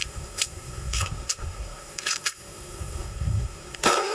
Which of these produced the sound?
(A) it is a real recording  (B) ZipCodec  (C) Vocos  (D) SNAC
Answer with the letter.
D